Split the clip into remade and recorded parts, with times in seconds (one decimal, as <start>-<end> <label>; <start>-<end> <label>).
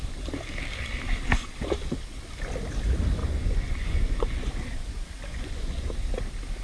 0.0-3.2 recorded; 3.2-4.5 remade; 4.5-5.3 recorded; 5.3-5.9 remade; 5.9-6.6 recorded